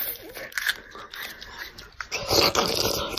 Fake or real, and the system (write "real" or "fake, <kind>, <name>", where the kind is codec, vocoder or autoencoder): real